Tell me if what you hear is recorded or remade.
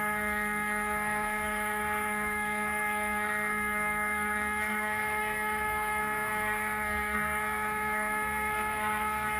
remade